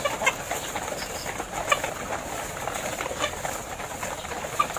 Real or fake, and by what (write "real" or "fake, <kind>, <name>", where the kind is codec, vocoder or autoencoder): real